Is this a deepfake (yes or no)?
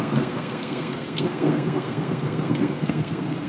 yes